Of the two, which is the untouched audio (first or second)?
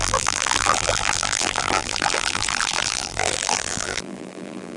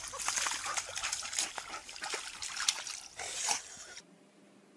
second